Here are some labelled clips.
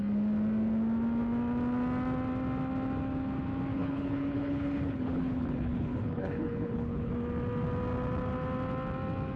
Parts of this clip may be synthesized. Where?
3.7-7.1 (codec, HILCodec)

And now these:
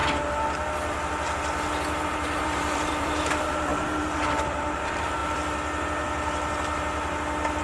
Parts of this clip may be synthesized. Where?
2.0-5.2 (vocoder, BigVGAN v2)

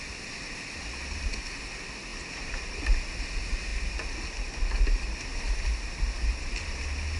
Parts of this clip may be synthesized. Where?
2.1-2.8 (vocoder, BigVGAN v2)